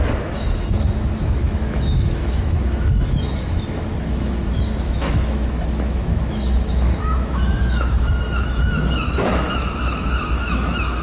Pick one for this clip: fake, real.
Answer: fake